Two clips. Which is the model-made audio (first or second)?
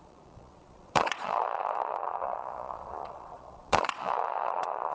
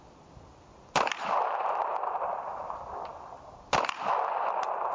first